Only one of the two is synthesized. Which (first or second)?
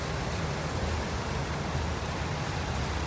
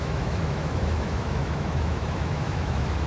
second